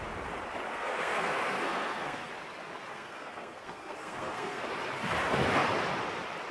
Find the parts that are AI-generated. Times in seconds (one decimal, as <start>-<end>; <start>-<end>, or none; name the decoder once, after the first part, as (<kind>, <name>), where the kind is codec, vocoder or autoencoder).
0.7-2.3 (codec, SNAC); 2.9-4.6